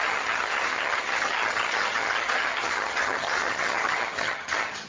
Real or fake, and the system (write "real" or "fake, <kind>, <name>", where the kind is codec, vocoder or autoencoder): fake, vocoder, HiFi-GAN